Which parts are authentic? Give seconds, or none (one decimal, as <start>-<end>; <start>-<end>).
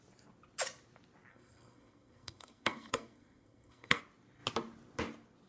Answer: 0.0-1.3; 4.0-5.5